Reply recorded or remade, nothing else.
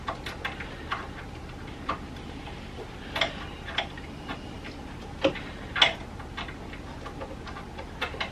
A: recorded